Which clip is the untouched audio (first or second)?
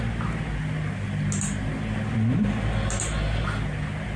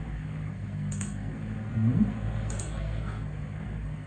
first